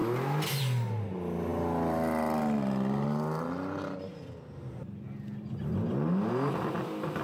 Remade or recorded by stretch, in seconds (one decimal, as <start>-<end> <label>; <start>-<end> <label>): 0.0-7.2 recorded